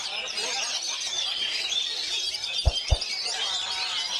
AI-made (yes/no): no